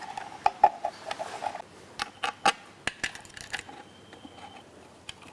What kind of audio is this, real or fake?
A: real